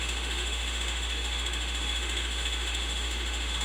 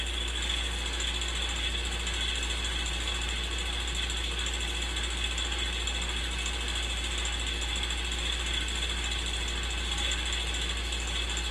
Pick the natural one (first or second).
second